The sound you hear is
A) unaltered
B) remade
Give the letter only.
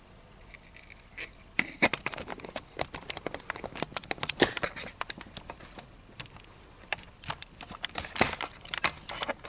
A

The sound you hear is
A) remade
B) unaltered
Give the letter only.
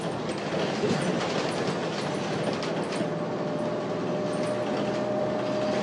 B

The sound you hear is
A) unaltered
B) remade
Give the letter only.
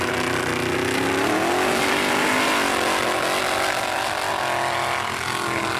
A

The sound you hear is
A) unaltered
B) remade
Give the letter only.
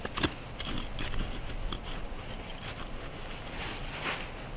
A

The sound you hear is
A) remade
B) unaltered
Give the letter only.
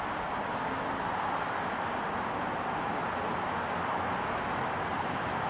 B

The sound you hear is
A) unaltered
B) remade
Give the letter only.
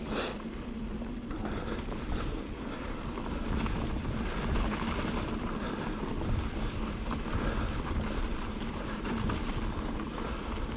A